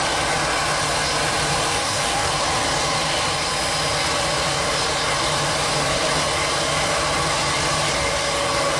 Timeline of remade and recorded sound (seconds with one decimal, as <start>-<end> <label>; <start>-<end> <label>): 0.0-1.7 recorded; 1.7-2.3 remade; 2.3-8.8 recorded